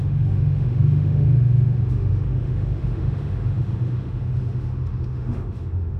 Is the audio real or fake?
fake